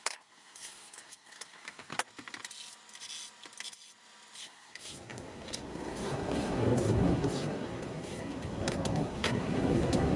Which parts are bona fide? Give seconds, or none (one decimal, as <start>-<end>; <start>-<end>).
1.9-4.4

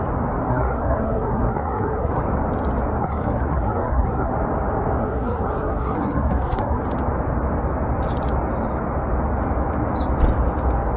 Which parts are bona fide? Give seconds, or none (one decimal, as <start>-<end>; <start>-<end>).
0.0-0.5; 2.2-2.9; 4.3-5.0; 6.8-11.0

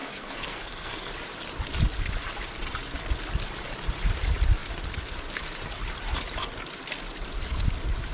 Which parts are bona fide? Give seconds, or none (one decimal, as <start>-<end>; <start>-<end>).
1.1-8.1

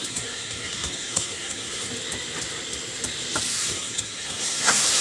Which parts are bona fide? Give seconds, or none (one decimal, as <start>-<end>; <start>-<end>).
1.9-3.5

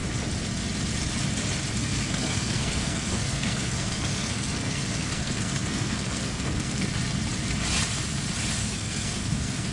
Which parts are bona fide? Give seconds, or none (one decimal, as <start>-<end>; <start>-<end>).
0.0-1.8; 6.9-8.6